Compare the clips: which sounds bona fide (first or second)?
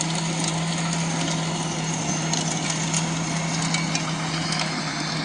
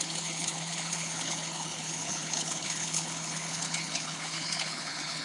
first